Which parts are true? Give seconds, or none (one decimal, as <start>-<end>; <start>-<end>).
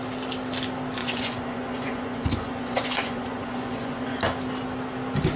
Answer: 0.0-1.0; 4.2-5.4